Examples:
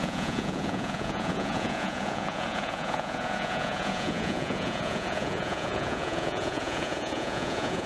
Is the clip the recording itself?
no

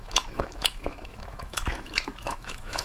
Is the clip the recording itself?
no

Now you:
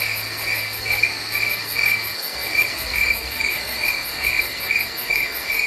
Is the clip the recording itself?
no